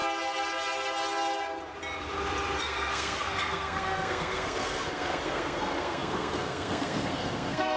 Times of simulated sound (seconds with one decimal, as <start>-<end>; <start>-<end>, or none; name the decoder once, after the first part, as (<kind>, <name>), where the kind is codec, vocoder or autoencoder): 2.6-7.8 (codec, SNAC)